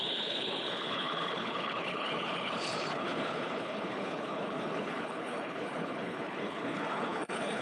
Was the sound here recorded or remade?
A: remade